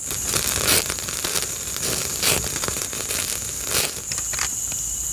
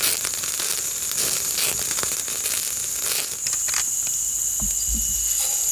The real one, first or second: second